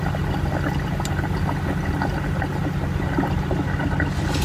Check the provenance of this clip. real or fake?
real